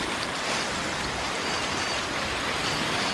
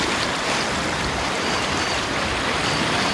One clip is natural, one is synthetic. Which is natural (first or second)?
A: first